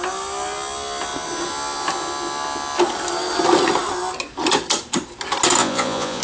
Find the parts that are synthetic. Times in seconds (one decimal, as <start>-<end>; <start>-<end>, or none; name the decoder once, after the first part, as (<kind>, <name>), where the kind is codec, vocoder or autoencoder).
5.6-6.2 (vocoder, Vocos)